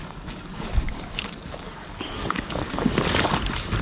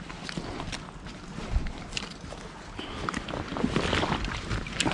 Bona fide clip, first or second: second